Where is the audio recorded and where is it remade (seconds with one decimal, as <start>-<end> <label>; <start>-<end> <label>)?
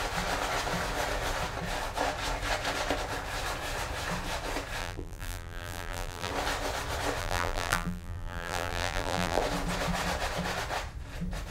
0.0-4.8 recorded; 4.8-6.3 remade; 6.3-7.2 recorded; 7.2-9.4 remade; 9.4-11.5 recorded